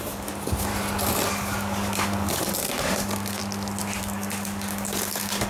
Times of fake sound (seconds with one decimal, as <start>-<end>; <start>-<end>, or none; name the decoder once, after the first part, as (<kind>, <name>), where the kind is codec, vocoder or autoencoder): 0.0-0.7 (codec, DAC); 1.3-3.4; 4.0-5.5